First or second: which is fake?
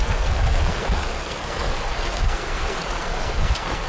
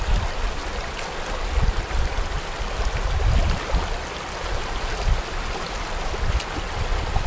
first